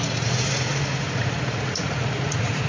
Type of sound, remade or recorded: remade